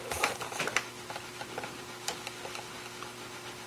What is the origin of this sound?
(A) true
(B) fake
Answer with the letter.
A